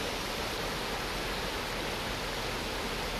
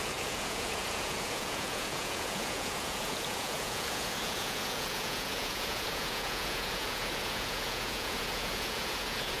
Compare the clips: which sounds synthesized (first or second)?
second